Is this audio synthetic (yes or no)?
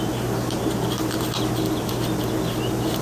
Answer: no